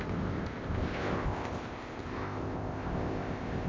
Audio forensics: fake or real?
fake